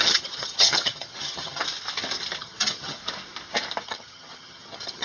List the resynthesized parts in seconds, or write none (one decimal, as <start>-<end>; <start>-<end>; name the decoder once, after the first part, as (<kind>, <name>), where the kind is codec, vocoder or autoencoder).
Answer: 0.0-1.6 (vocoder, HiFi-GAN); 2.4-3.0; 3.8-5.0